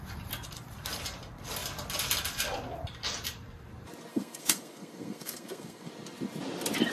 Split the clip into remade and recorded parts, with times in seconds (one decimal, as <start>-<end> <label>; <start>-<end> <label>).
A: 0.0-4.1 recorded; 4.1-5.9 remade; 5.9-6.9 recorded